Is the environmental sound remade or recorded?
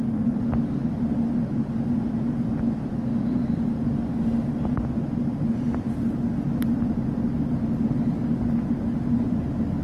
recorded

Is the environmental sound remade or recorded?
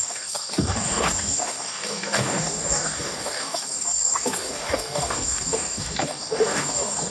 remade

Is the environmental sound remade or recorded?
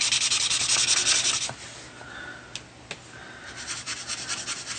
recorded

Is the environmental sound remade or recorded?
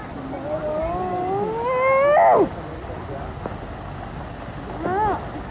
recorded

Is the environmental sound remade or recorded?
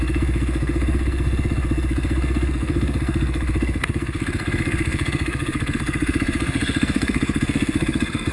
remade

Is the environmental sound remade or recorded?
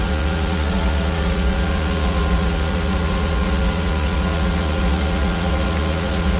remade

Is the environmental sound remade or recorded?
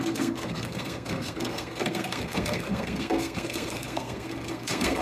remade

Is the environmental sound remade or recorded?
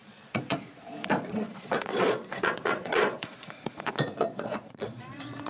remade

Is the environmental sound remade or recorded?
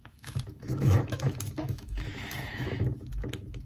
remade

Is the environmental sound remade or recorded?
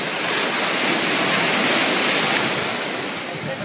recorded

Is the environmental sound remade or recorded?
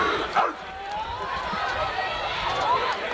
remade